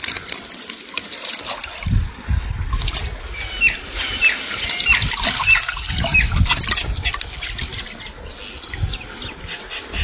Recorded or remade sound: recorded